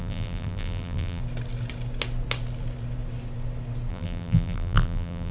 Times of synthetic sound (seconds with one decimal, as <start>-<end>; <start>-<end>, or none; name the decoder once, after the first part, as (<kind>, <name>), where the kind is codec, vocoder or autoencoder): 0.0-1.2 (vocoder, BigVGAN v2); 3.9-5.3